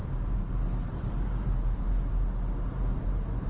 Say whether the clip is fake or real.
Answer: real